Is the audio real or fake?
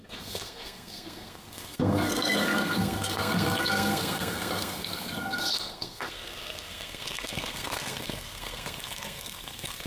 fake